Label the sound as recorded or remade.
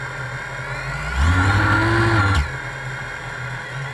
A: recorded